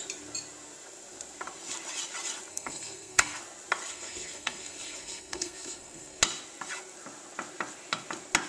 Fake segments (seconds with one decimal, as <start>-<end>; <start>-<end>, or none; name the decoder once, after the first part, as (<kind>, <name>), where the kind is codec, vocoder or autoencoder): 2.5-3.4 (codec, SNAC); 3.9-6.2